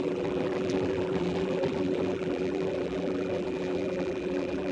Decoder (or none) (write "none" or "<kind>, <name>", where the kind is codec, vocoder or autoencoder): vocoder, BigVGAN v2